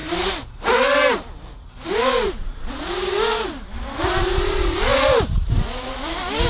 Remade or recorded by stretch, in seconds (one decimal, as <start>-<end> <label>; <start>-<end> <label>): 0.0-4.9 recorded; 4.9-6.5 remade

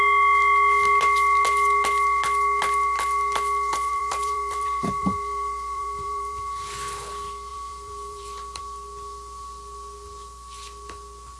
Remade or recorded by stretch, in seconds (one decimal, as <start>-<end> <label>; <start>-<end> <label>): 0.0-3.7 recorded; 3.7-6.4 remade; 6.4-7.5 recorded; 7.5-8.6 remade; 8.6-11.4 recorded

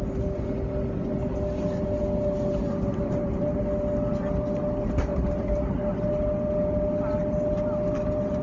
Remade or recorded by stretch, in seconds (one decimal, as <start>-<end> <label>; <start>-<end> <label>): 0.0-2.9 recorded; 2.9-3.6 remade; 3.6-5.1 recorded; 5.1-6.0 remade; 6.0-8.4 recorded

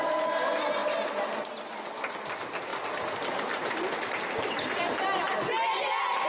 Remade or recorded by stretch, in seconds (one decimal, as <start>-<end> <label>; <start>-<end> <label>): 0.0-2.7 recorded; 2.7-4.5 remade; 4.5-6.3 recorded

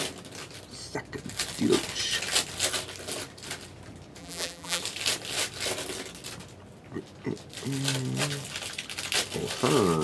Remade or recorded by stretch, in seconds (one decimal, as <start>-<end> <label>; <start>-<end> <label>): 0.0-4.2 recorded; 4.2-4.8 remade; 4.8-10.0 recorded

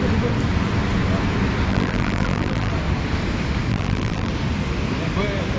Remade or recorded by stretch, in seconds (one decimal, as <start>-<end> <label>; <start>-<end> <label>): 0.0-1.7 recorded; 1.7-2.7 remade; 2.7-3.7 recorded; 3.7-4.3 remade; 4.3-5.6 recorded

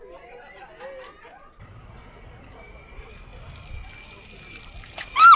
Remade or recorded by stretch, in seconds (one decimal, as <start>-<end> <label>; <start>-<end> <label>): 0.0-5.4 recorded

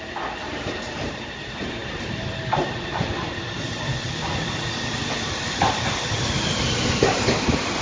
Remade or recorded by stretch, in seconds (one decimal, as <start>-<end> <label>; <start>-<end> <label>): 0.0-7.8 remade